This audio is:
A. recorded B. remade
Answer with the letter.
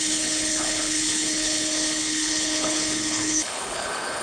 B